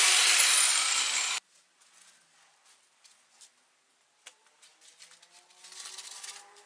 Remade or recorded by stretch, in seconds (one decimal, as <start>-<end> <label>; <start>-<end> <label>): 0.0-6.7 recorded